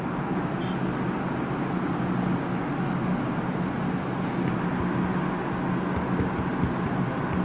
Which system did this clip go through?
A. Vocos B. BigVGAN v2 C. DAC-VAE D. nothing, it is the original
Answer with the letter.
D